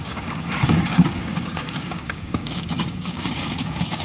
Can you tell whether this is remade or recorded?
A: remade